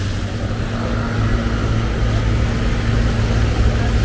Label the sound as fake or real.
real